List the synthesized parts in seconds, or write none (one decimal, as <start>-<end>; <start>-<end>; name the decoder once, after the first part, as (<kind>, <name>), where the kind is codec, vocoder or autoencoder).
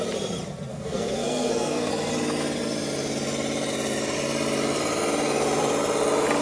0.7-1.9 (codec, SNAC)